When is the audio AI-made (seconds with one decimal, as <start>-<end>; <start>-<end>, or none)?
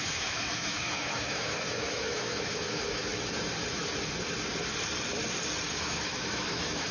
0.0-3.0; 5.8-6.9